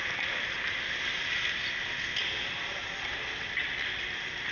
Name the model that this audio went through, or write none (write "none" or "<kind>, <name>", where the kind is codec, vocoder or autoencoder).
none